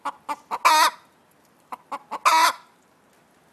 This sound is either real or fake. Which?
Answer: real